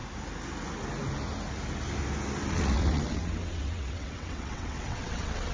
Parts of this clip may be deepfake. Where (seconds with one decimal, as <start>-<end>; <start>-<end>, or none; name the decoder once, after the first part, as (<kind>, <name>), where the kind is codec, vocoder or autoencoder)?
2.5-5.5 (vocoder, WaveNeXt)